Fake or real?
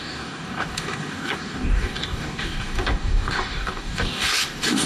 fake